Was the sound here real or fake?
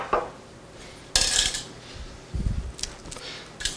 real